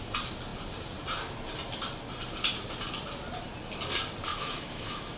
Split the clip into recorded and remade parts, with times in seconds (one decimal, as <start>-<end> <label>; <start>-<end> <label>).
0.0-4.3 recorded; 4.3-5.2 remade